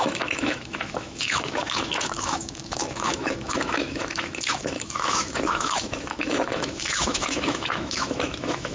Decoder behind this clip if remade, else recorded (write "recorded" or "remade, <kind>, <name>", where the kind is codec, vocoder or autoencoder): remade, autoencoder, DAC-VAE